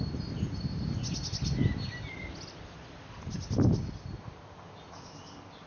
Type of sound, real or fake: real